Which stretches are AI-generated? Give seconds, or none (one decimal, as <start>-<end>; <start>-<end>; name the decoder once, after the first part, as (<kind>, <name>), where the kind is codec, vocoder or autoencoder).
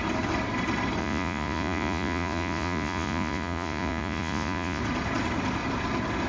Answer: 1.0-4.8 (vocoder, Vocos)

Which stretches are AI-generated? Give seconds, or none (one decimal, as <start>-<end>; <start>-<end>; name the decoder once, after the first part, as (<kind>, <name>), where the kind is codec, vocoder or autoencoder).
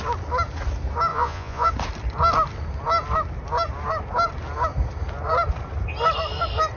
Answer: 1.1-1.7 (vocoder, Vocos)